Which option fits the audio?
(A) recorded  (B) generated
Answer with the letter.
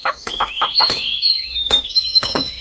B